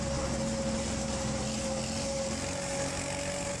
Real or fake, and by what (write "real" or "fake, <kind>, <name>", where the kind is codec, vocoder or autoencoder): real